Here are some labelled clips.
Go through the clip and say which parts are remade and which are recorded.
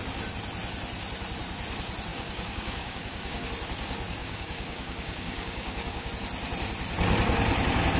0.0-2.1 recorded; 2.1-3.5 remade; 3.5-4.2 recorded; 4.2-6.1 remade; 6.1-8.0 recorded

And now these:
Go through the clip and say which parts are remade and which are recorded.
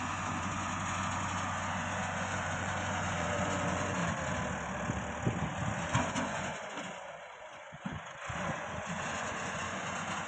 0.0-4.0 remade; 4.0-6.0 recorded; 6.0-10.3 remade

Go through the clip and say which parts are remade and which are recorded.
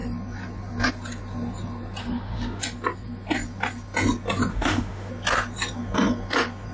0.0-2.0 recorded; 2.0-2.6 remade; 2.6-4.5 recorded; 4.5-5.1 remade; 5.1-6.7 recorded